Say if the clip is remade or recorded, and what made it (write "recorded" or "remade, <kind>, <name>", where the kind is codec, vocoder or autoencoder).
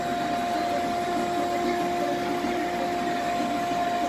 recorded